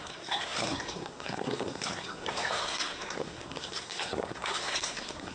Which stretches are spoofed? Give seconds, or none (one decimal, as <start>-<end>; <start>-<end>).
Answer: 0.0-5.3